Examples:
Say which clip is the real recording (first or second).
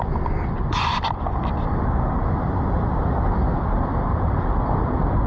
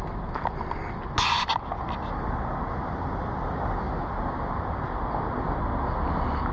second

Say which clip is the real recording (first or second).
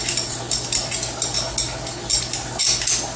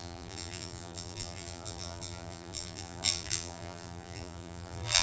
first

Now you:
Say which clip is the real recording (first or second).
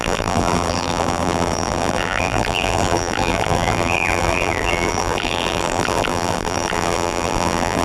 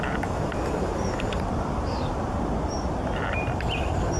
second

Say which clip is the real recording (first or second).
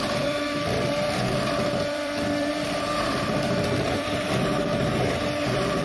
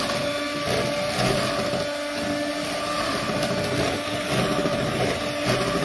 second